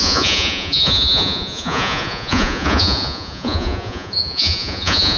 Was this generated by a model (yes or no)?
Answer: yes